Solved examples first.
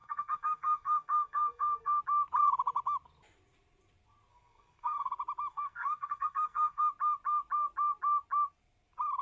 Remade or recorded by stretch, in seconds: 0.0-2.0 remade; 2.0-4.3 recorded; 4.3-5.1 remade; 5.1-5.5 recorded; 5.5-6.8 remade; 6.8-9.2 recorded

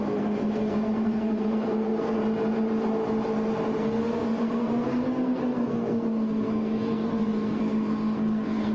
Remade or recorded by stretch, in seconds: 0.0-2.2 remade; 2.2-3.8 recorded; 3.8-8.7 remade

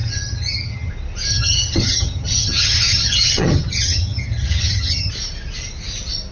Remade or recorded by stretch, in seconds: 0.0-0.9 remade; 0.9-1.3 recorded; 1.3-5.1 remade; 5.1-6.3 recorded